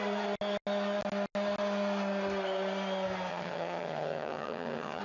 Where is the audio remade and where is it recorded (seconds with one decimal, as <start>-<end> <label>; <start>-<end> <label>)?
0.0-3.3 recorded; 3.3-5.0 remade